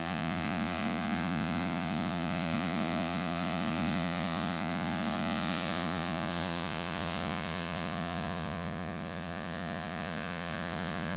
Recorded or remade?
remade